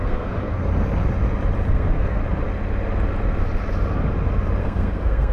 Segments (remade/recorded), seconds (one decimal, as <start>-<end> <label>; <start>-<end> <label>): 0.0-0.7 remade; 0.7-1.7 recorded; 1.7-2.2 remade; 2.2-4.6 recorded; 4.6-5.3 remade